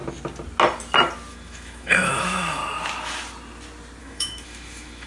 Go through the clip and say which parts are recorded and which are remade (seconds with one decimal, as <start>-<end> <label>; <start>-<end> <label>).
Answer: 0.0-1.3 recorded; 1.3-2.6 remade; 2.6-4.0 recorded; 4.0-5.1 remade